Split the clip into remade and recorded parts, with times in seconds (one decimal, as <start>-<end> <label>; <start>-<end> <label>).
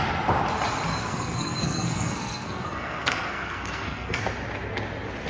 0.0-1.0 recorded; 1.0-4.2 remade; 4.2-5.3 recorded